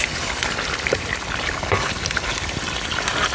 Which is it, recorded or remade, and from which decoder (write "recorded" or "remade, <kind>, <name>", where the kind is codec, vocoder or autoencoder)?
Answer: recorded